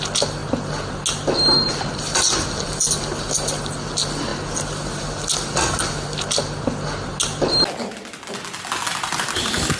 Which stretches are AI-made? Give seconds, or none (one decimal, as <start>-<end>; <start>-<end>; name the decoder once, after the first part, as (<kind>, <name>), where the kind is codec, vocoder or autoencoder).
none